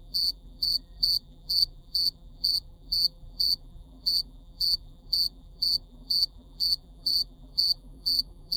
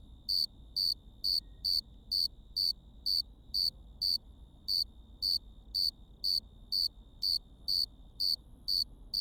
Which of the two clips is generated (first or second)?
first